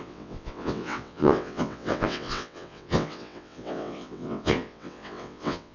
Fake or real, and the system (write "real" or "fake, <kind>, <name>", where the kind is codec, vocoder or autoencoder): fake, vocoder, WaveNeXt